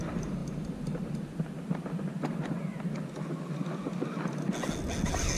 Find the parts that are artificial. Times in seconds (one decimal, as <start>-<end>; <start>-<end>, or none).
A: none